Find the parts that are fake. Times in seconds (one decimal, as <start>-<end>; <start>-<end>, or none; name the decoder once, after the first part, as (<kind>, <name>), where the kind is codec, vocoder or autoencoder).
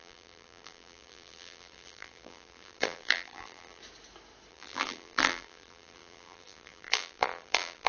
0.0-3.8 (vocoder, BigVGAN v2); 4.5-7.9